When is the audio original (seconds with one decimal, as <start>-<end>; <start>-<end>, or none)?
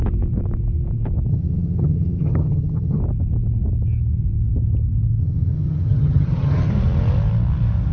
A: 0.0-1.3; 3.0-5.2; 6.7-7.9